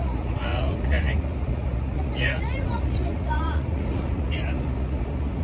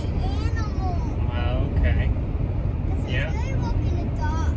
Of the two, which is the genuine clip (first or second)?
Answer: second